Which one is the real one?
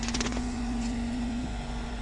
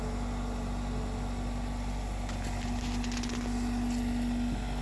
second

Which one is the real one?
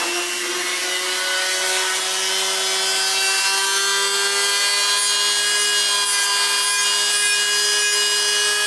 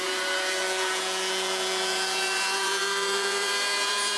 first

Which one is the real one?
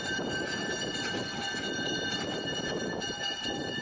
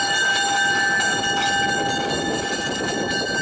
second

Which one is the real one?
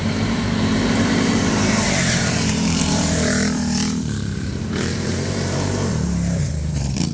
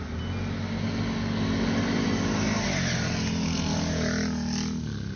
second